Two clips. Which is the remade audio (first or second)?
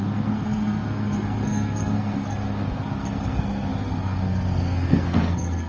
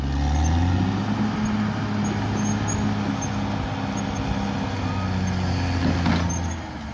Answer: first